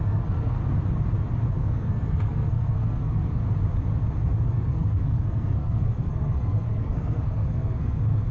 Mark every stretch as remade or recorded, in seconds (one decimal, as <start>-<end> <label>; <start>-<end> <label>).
0.0-0.6 remade; 0.6-1.5 recorded; 1.5-3.4 remade; 3.4-4.5 recorded; 4.5-8.3 remade